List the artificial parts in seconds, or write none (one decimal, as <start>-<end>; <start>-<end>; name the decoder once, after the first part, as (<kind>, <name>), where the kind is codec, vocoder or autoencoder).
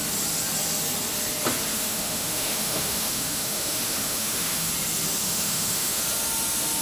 1.7-4.7 (autoencoder, DAC-VAE); 5.2-6.0